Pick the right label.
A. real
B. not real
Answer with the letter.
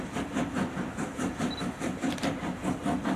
B